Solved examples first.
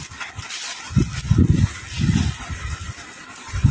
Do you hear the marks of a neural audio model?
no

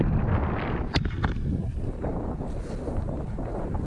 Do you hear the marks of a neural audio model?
no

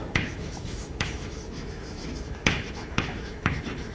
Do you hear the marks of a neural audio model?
yes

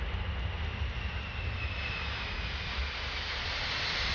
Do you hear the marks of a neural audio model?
no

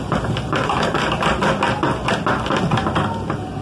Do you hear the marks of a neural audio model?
no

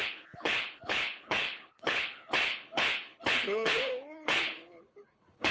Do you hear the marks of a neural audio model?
yes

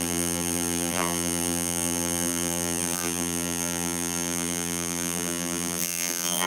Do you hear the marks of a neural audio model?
yes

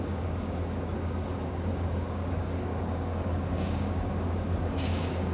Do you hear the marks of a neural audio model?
yes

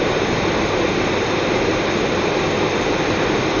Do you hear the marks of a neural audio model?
no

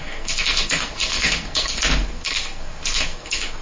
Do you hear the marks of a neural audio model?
yes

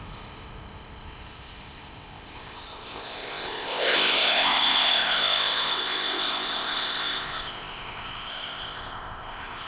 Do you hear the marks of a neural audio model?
yes